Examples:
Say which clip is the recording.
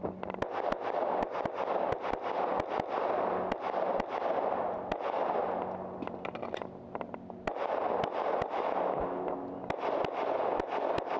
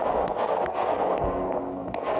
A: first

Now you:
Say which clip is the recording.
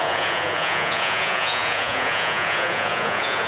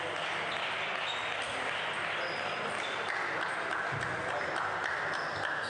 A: second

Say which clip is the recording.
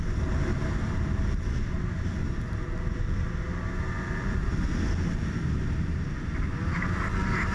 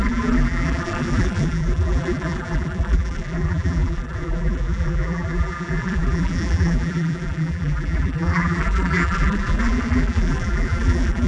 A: first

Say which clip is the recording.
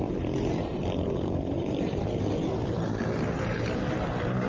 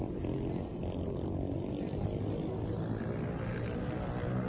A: second